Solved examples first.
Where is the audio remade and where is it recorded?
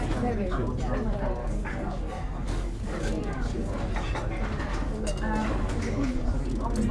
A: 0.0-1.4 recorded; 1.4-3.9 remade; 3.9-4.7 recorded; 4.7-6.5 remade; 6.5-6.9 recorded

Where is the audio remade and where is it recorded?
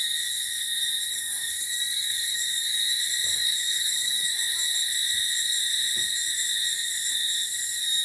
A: 0.0-1.1 recorded; 1.1-2.8 remade; 2.8-3.3 recorded; 3.3-4.4 remade; 4.4-8.0 recorded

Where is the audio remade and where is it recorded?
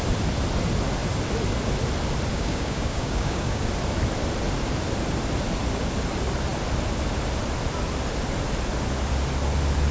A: 0.0-2.3 recorded; 2.3-3.6 remade; 3.6-9.9 recorded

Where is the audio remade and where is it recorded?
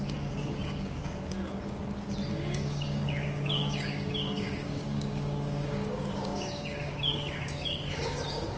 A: 0.0-1.8 remade; 1.8-2.3 recorded; 2.3-8.6 remade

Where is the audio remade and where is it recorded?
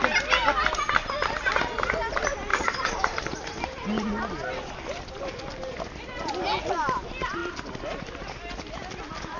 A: 0.0-2.5 recorded; 2.5-3.3 remade; 3.3-9.4 recorded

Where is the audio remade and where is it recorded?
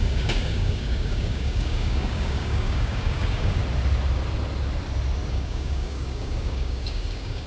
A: 0.0-3.6 remade; 3.6-5.3 recorded; 5.3-7.5 remade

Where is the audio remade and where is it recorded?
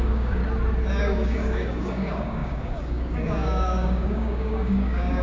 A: 0.0-0.4 remade; 0.4-1.0 recorded; 1.0-5.2 remade